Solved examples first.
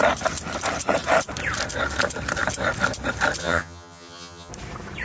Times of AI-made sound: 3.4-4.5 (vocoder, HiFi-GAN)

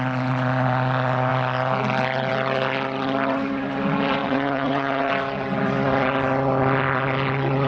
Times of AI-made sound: 4.2-5.1 (vocoder, WaveNeXt)

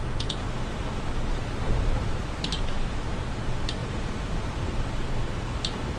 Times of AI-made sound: 1.3-2.6 (vocoder, BigVGAN v2); 3.8-5.1